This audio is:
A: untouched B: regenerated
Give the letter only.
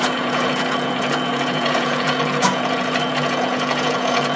B